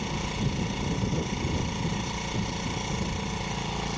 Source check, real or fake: real